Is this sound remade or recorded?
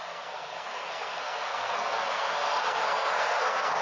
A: remade